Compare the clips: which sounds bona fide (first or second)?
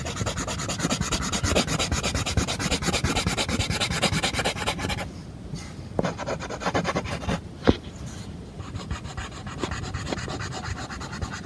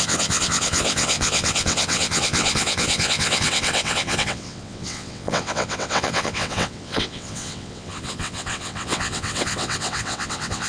first